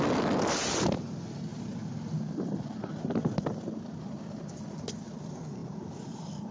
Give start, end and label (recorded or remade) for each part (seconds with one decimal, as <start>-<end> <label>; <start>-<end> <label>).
0.0-6.5 recorded